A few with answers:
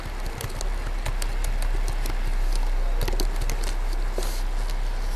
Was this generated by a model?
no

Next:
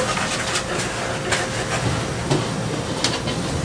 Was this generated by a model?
no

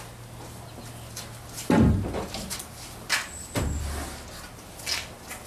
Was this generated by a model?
no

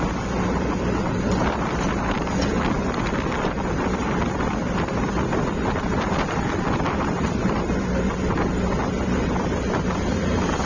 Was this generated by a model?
yes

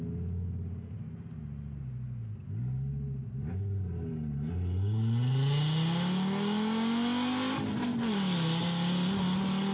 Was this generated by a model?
no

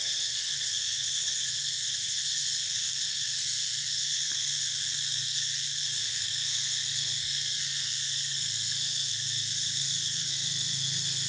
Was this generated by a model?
yes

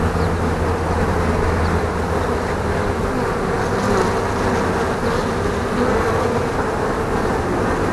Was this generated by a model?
no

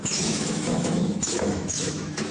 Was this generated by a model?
yes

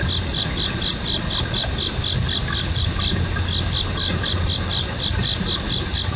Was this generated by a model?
no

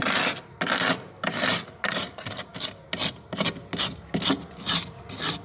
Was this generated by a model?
no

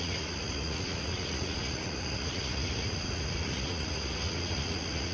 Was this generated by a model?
yes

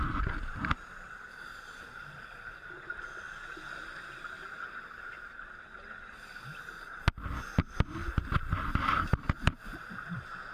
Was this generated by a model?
no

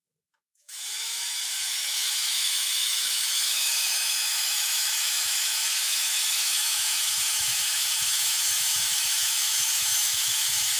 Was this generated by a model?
yes